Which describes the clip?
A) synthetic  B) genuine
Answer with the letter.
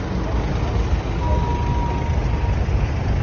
B